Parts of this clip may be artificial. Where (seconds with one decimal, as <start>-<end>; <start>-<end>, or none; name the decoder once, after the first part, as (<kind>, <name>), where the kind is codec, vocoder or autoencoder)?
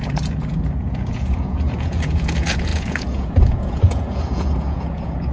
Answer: 0.0-5.3 (vocoder, Vocos)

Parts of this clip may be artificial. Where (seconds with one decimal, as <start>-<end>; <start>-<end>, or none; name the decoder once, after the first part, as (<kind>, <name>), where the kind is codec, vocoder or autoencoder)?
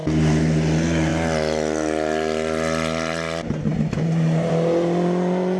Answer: none